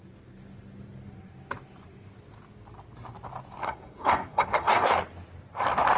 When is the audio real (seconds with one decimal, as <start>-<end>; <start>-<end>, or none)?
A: 0.0-3.6; 4.9-6.0